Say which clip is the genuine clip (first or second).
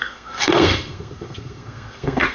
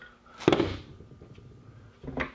second